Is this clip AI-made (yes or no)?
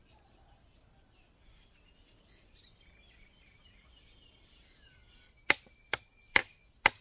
yes